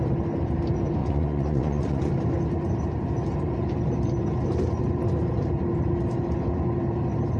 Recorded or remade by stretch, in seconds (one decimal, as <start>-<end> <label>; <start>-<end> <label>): 0.0-1.0 recorded; 1.0-2.1 remade; 2.1-7.4 recorded